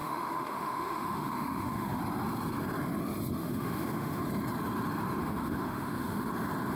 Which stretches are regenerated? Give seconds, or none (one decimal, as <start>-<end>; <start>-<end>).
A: 0.0-2.0; 3.4-4.2; 5.2-6.3